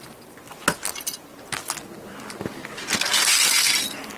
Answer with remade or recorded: recorded